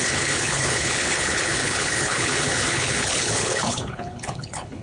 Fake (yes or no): yes